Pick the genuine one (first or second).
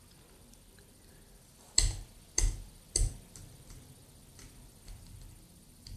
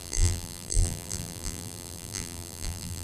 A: first